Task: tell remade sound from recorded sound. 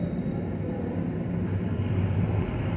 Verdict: recorded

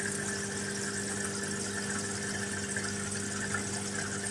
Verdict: recorded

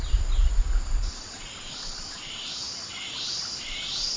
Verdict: recorded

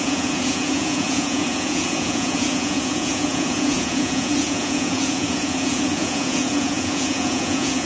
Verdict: remade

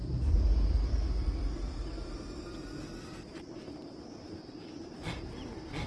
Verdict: recorded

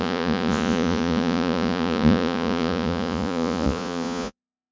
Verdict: remade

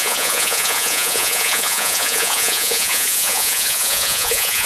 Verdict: remade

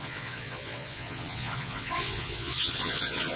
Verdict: remade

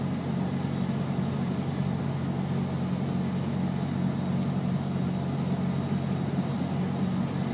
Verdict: recorded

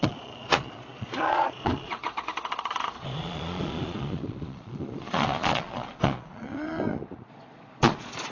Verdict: remade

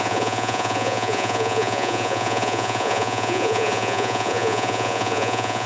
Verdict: remade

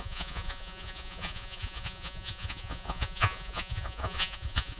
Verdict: remade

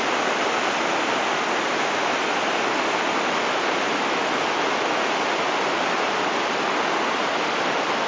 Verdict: recorded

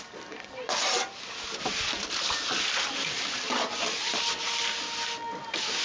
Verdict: recorded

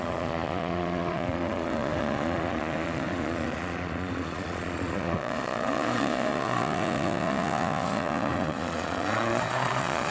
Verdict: remade